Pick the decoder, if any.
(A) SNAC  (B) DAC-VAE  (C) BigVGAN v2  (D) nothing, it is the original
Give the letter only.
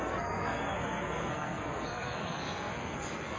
A